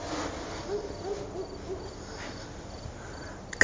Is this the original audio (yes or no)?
yes